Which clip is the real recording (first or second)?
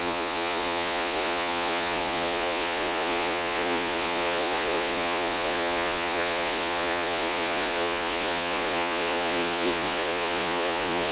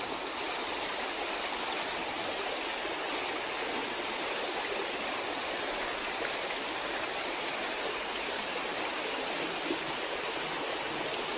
second